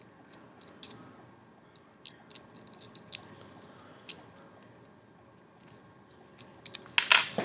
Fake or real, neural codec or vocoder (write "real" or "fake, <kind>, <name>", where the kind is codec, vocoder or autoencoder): real